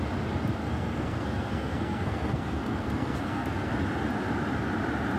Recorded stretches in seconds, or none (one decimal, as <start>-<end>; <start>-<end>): 0.0-0.6; 3.7-5.2